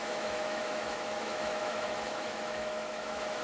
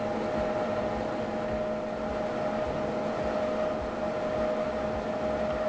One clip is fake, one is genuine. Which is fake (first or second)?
first